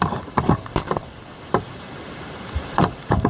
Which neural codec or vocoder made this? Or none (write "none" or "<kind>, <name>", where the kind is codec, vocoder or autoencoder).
vocoder, BigVGAN v2